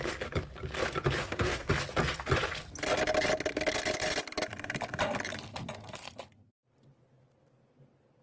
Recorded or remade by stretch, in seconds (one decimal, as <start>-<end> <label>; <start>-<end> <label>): 0.0-1.2 recorded; 1.2-1.7 remade; 1.7-8.2 recorded